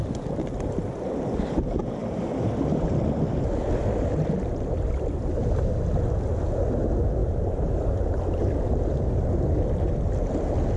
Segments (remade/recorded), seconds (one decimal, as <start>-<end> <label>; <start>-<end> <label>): 0.0-2.0 recorded; 2.0-2.9 remade; 2.9-7.2 recorded; 7.2-8.5 remade; 8.5-10.8 recorded